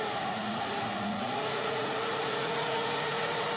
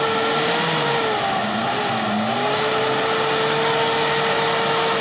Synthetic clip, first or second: first